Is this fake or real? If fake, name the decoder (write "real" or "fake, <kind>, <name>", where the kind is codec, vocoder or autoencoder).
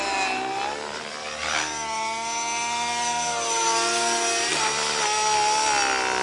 real